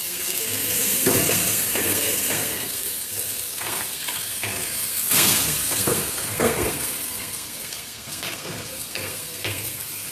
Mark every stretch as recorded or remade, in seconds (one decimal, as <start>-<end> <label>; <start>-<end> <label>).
0.0-10.1 remade